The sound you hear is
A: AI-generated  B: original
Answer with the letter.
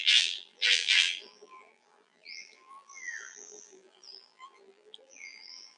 A